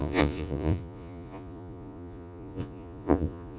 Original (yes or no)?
no